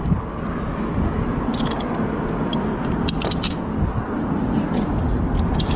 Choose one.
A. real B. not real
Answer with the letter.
A